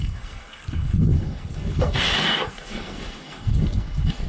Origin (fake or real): fake